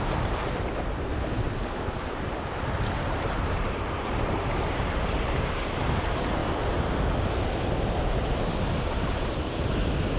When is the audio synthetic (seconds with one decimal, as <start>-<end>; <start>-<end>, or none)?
0.0-1.1; 2.8-6.4; 8.8-10.2